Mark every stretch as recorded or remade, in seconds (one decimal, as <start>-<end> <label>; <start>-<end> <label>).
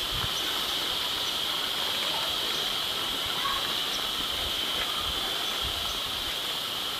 0.0-7.0 recorded